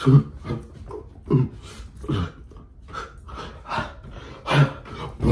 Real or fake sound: real